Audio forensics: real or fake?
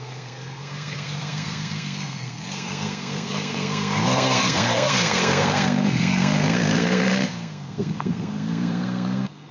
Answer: fake